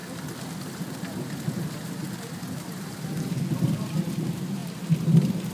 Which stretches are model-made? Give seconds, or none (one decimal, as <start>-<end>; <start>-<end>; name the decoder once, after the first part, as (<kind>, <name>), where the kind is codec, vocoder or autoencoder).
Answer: 0.0-3.1 (vocoder, BigVGAN v2)